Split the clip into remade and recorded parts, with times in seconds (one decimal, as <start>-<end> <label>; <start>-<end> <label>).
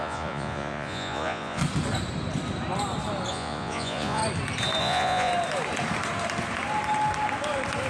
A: 0.0-1.6 remade; 1.6-3.3 recorded; 3.3-4.2 remade; 4.2-4.8 recorded; 4.8-5.3 remade; 5.3-7.9 recorded